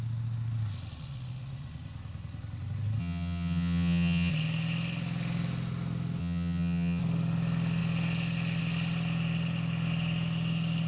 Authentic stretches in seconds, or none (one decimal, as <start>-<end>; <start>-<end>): 0.0-3.0; 4.3-6.2; 7.0-10.9